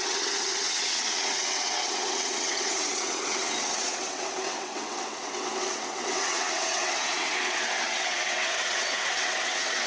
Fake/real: fake